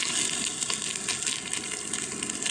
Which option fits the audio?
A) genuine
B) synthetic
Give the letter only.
A